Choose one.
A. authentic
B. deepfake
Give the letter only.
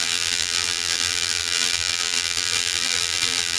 B